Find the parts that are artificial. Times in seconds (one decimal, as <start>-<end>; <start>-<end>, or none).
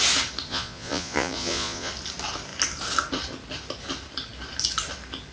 0.5-1.9